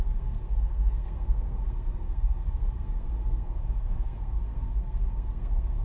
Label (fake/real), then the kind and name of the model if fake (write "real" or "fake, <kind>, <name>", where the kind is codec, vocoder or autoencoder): fake, codec, SNAC